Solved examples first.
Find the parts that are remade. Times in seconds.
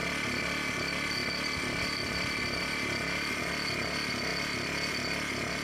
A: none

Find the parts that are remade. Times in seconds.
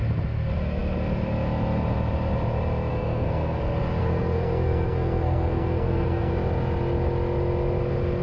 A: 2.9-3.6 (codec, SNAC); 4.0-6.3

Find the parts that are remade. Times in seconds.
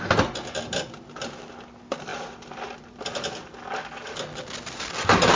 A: none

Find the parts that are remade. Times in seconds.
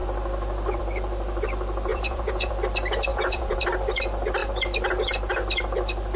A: 1.9-2.5 (vocoder, Vocos); 3.1-3.6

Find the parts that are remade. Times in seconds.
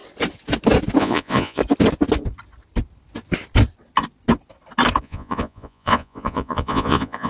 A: 1.0-1.6 (vocoder, Vocos); 5.0-7.3